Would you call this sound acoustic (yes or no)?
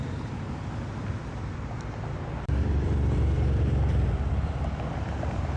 no